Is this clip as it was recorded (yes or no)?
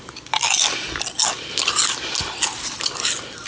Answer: yes